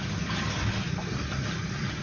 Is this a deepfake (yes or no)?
no